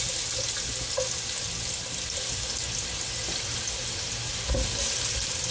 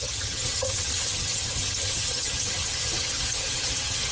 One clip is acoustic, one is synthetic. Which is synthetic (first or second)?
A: second